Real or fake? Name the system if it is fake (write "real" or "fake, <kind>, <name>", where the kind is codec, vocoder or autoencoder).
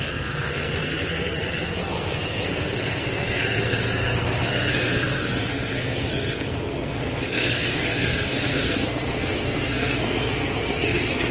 fake, codec, SNAC